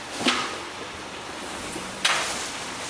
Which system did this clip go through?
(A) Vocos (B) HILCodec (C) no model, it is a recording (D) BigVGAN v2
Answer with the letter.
C